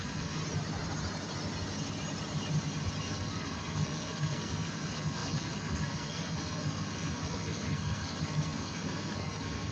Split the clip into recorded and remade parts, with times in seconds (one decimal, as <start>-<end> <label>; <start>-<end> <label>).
0.0-0.4 remade; 0.4-3.0 recorded; 3.0-9.7 remade

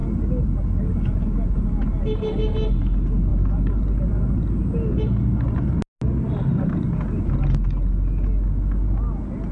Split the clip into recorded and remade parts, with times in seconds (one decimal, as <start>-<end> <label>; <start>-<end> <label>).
0.0-9.5 recorded